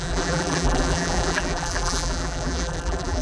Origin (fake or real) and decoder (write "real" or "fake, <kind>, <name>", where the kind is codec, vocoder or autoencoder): fake, vocoder, BigVGAN v2